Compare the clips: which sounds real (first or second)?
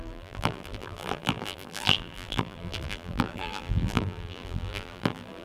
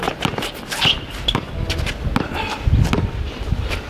second